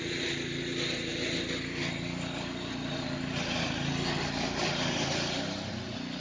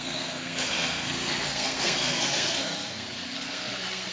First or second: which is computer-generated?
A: second